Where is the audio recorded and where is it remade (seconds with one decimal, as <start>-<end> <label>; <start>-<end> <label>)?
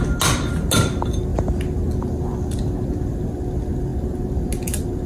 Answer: 0.0-5.1 recorded